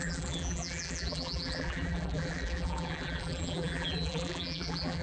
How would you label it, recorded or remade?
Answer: remade